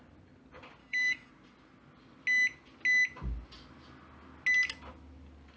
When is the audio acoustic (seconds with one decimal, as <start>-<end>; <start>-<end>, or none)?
0.0-0.8; 1.3-5.6